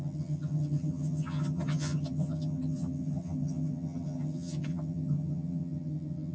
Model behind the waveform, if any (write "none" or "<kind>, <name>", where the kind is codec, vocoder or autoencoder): vocoder, HiFi-GAN